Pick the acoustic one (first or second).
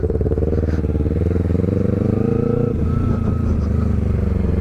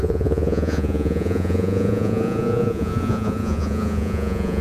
first